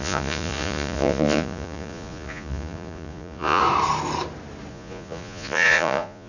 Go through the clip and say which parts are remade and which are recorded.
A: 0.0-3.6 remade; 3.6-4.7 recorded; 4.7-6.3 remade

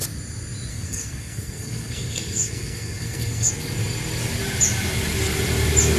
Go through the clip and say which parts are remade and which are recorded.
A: 0.0-0.7 recorded; 0.7-3.5 remade; 3.5-6.0 recorded

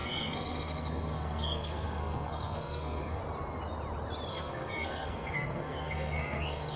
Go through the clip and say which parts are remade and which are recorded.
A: 0.0-3.2 remade; 3.2-4.3 recorded; 4.3-6.8 remade

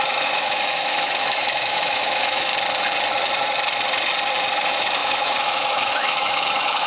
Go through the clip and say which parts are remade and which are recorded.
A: 0.0-2.5 remade; 2.5-4.5 recorded; 4.5-6.9 remade

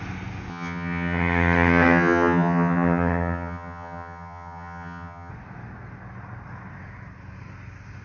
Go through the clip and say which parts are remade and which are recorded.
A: 0.0-0.5 recorded; 0.5-5.3 remade; 5.3-8.0 recorded

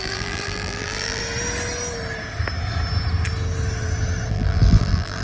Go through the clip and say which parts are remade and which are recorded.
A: 0.0-1.2 remade; 1.2-4.3 recorded; 4.3-5.2 remade

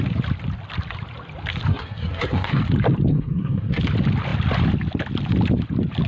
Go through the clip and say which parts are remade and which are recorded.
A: 0.0-1.7 recorded; 1.7-2.6 remade; 2.6-3.1 recorded; 3.1-3.8 remade; 3.8-6.1 recorded

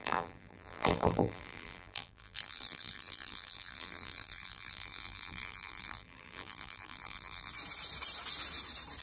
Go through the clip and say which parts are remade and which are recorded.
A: 0.0-7.5 remade; 7.5-9.0 recorded